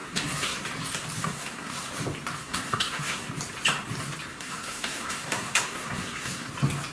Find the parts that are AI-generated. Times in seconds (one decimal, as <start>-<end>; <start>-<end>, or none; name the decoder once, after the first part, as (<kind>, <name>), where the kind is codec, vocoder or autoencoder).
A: 0.0-0.6 (codec, SNAC); 1.2-1.9; 2.4-3.3; 4.3-6.5